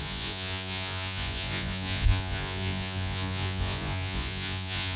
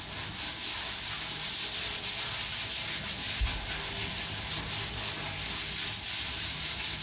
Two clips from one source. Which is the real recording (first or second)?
second